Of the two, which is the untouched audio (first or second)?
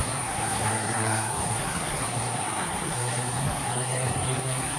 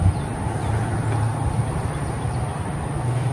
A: second